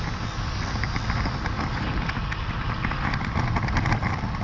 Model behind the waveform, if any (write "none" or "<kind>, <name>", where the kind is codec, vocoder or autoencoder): none